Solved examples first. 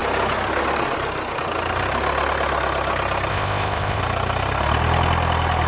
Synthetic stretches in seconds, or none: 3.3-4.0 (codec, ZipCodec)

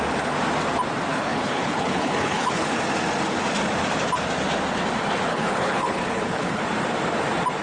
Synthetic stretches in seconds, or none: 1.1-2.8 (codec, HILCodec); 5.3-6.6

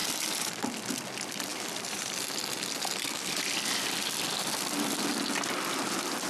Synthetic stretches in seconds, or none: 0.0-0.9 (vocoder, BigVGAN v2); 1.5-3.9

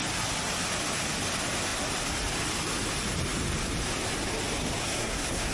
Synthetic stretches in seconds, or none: 4.8-5.5 (codec, SNAC)

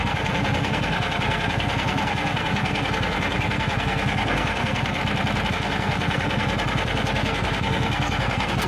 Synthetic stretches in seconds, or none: 0.0-5.0 (codec, SNAC); 5.5-8.7